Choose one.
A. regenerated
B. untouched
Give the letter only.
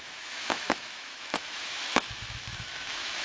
A